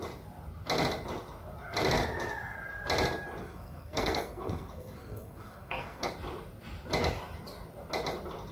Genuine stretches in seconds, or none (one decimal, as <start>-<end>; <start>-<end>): 0.0-3.4; 6.1-8.5